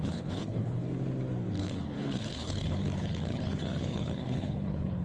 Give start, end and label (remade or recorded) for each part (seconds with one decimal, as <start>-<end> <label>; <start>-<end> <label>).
0.0-0.8 remade; 0.8-1.6 recorded; 1.6-5.0 remade